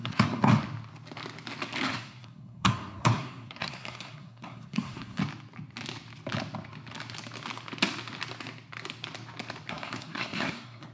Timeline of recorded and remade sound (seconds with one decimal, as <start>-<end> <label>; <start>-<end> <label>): 0.0-0.5 remade; 0.5-1.8 recorded; 1.8-5.2 remade; 5.2-9.7 recorded; 9.7-10.9 remade